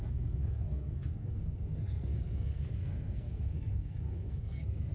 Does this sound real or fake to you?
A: fake